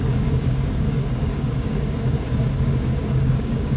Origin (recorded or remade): remade